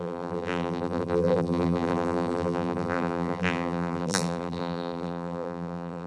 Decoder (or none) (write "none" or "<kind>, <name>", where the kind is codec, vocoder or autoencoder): vocoder, BigVGAN v2